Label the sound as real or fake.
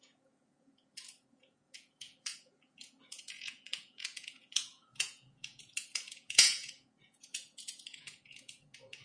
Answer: fake